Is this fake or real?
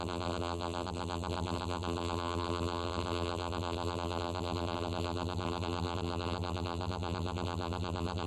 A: fake